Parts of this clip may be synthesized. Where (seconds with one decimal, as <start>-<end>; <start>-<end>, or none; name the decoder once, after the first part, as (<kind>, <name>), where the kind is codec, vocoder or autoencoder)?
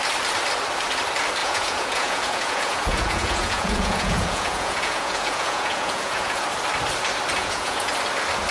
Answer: 1.4-6.4 (vocoder, Vocos); 7.4-7.9